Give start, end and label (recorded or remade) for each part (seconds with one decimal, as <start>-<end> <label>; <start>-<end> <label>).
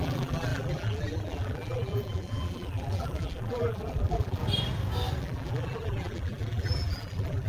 0.0-4.4 remade; 4.4-5.2 recorded; 5.2-7.5 remade